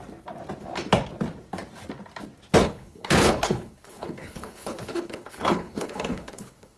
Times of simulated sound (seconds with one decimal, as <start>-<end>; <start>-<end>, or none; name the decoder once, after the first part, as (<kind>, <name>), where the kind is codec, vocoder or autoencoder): 2.6-6.8 (codec, HILCodec)